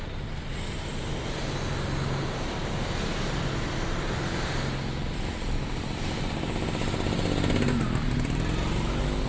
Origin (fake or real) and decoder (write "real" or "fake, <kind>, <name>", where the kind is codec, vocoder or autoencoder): real